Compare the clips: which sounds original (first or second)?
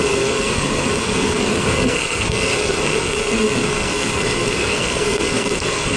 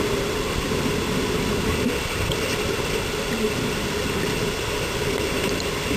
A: second